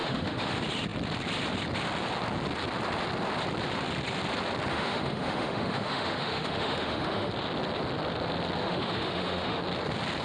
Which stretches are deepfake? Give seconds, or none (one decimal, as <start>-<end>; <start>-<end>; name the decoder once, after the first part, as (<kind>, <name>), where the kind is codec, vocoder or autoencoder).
0.0-0.5 (autoencoder, DAC-VAE); 4.7-7.3; 8.6-9.6